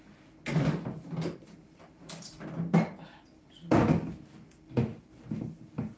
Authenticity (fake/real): real